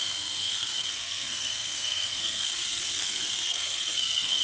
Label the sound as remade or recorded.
remade